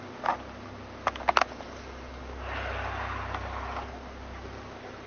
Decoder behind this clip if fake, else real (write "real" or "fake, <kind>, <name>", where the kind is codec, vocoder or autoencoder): real